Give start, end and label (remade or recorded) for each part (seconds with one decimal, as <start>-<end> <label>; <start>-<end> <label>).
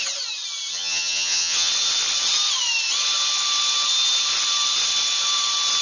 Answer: 0.0-0.7 recorded; 0.7-1.7 remade; 1.7-5.8 recorded